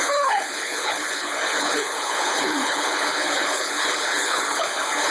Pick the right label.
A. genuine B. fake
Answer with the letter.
B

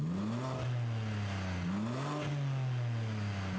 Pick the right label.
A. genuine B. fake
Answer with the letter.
A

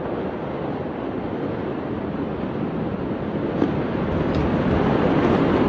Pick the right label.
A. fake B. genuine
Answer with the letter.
B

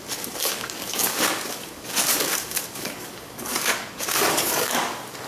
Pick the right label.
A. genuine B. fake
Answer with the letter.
B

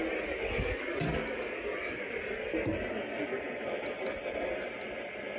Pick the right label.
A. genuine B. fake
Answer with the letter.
A